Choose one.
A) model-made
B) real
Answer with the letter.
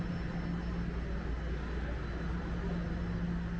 B